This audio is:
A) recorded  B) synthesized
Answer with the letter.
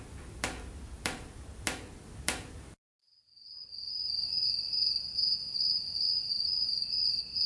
A